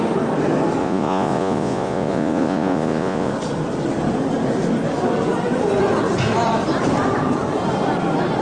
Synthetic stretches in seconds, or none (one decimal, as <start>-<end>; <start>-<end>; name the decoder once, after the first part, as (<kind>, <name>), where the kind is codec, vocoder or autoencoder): 0.8-3.3 (vocoder, Vocos)